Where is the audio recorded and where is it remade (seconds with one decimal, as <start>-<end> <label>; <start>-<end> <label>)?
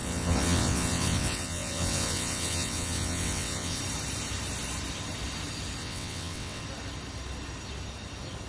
0.0-3.8 remade; 3.8-5.8 recorded; 5.8-6.6 remade; 6.6-8.5 recorded